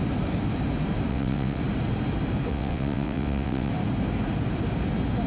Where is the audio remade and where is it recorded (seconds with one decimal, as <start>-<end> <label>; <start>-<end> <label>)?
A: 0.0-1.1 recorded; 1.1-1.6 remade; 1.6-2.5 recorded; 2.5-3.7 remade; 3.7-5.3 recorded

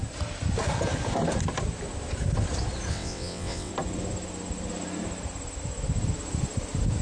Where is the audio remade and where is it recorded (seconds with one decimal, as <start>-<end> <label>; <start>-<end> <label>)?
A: 0.0-2.9 recorded; 2.9-3.7 remade; 3.7-7.0 recorded

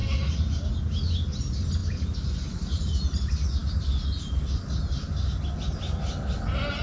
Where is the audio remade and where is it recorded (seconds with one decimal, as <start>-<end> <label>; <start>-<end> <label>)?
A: 0.0-6.8 recorded

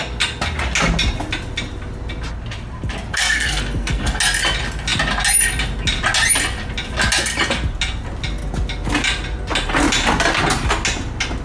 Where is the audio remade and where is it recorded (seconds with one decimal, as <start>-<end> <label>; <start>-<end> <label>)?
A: 0.0-3.1 recorded; 3.1-4.2 remade; 4.2-11.4 recorded

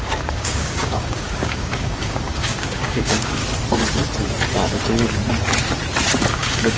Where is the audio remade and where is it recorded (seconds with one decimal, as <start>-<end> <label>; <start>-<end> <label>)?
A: 0.0-3.4 remade; 3.4-6.3 recorded; 6.3-6.8 remade